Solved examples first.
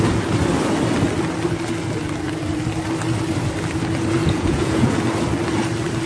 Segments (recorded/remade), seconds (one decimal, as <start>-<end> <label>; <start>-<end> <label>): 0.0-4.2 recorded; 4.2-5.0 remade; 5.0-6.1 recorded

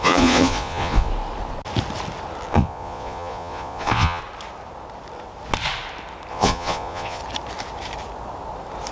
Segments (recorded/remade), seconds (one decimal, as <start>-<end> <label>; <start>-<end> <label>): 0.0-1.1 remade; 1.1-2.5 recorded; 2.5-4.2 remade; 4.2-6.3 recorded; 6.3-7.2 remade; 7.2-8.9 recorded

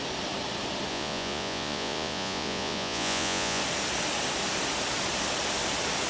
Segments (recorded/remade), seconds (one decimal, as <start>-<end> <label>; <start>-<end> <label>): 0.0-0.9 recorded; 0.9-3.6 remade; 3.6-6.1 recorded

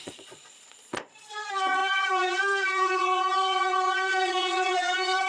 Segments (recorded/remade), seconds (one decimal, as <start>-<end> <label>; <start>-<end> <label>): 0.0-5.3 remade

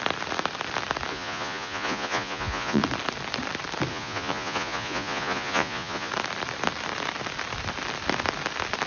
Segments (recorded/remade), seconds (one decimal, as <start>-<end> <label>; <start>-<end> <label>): 0.0-1.1 recorded; 1.1-2.8 remade; 2.8-3.9 recorded; 3.9-6.1 remade; 6.1-8.9 recorded

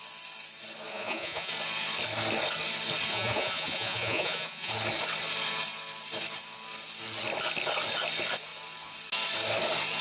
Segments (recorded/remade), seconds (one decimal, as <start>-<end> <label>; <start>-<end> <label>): 0.0-0.9 recorded; 0.9-1.5 remade; 1.5-3.1 recorded; 3.1-4.7 remade; 4.7-10.0 recorded